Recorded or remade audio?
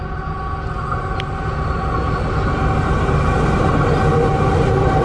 recorded